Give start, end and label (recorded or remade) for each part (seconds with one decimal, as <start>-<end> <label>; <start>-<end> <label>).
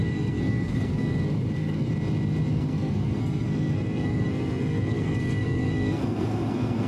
0.0-1.9 remade; 1.9-2.5 recorded; 2.5-6.9 remade